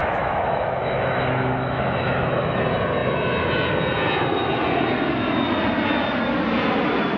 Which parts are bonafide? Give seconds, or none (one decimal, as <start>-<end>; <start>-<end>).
2.6-7.2